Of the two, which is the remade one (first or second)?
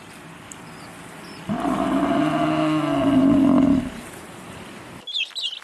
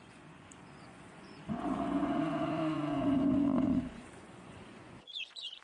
second